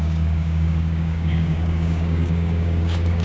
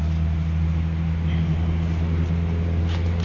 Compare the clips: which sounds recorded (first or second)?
second